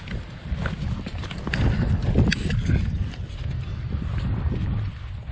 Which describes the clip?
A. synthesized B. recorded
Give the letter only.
B